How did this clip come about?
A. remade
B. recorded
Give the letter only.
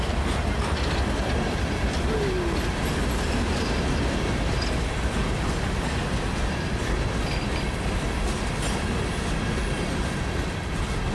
B